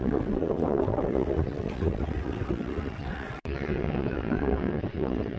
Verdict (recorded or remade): remade